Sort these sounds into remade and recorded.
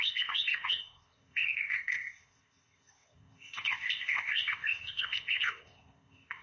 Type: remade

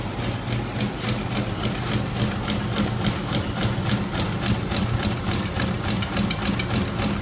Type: recorded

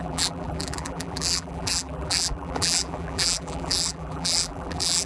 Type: remade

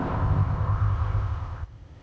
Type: remade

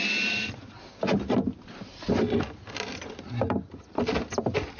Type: recorded